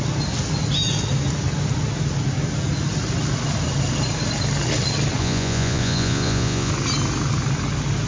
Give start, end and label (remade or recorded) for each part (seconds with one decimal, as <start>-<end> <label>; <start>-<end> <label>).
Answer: 0.0-5.2 recorded; 5.2-6.7 remade; 6.7-8.1 recorded